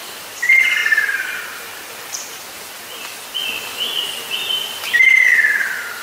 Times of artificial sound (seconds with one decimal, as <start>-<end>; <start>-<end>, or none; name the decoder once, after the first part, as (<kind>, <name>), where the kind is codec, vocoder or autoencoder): none